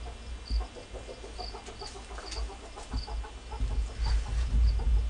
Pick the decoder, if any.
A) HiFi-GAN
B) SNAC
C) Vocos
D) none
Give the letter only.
D